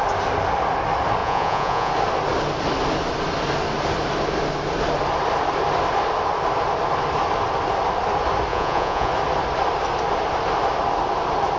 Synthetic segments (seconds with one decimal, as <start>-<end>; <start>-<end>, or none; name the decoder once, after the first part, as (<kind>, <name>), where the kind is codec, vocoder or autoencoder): 1.2-1.9 (vocoder, Vocos); 8.5-9.1